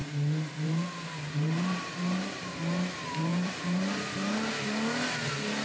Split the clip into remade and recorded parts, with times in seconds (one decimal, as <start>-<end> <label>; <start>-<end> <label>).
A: 0.0-2.5 remade; 2.5-3.3 recorded; 3.3-4.5 remade; 4.5-5.6 recorded

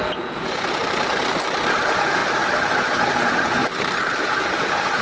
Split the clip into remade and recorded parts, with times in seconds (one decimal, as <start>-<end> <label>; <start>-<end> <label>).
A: 0.0-0.8 remade; 0.8-1.8 recorded; 1.8-2.2 remade; 2.2-2.8 recorded; 2.8-3.6 remade; 3.6-4.2 recorded; 4.2-5.0 remade

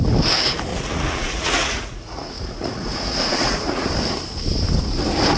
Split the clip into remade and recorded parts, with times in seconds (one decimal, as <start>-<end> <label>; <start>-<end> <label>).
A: 0.0-0.7 recorded; 0.7-3.9 remade; 3.9-5.4 recorded

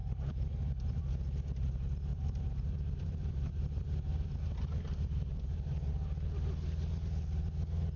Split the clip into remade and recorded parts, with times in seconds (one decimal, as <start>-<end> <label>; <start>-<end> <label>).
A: 0.0-1.0 remade; 1.0-2.1 recorded; 2.1-5.9 remade; 5.9-8.0 recorded

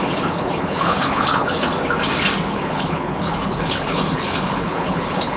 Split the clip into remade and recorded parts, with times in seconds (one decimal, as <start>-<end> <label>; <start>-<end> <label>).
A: 0.0-1.7 remade; 1.7-2.5 recorded; 2.5-5.4 remade

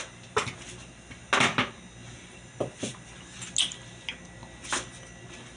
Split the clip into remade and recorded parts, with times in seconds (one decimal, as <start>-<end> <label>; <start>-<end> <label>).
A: 0.0-5.6 recorded

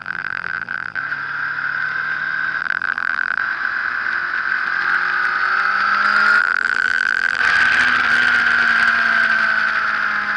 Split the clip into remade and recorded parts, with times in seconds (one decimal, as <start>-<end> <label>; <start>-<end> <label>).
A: 0.0-1.0 remade; 1.0-2.6 recorded; 2.6-3.4 remade; 3.4-6.4 recorded; 6.4-7.4 remade; 7.4-10.4 recorded